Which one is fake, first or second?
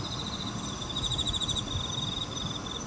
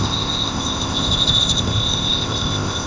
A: second